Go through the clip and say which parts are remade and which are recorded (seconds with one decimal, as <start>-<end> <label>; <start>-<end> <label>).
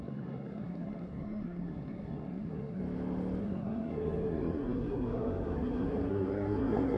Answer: 0.0-2.8 remade; 2.8-3.4 recorded; 3.4-7.0 remade